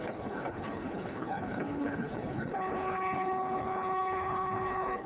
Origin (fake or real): fake